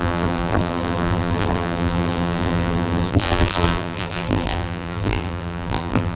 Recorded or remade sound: remade